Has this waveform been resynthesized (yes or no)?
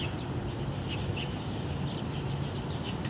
no